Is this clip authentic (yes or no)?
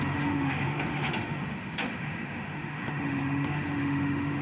no